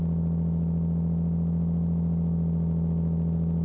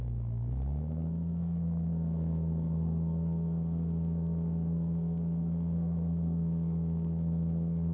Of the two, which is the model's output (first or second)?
second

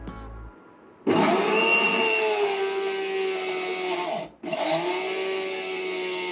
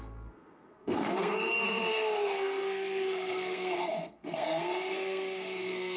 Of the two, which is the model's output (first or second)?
second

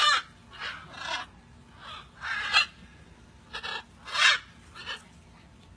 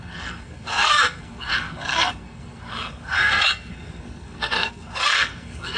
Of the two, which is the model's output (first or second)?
second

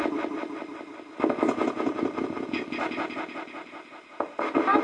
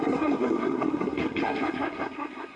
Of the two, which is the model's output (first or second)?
second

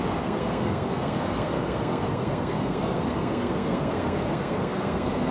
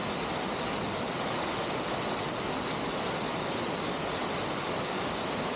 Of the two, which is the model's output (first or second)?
first